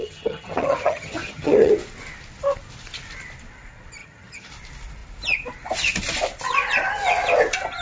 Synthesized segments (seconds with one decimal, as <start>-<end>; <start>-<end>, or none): 0.0-1.7; 4.0-4.5